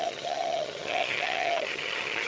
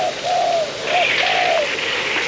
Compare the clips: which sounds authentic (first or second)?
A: second